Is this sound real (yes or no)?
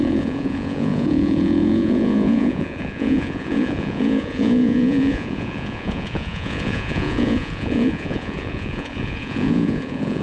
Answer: no